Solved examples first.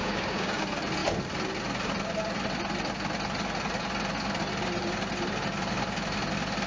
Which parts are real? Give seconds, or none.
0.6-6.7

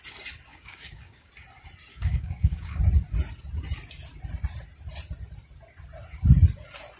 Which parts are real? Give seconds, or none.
0.0-0.5; 1.3-1.9; 2.8-7.0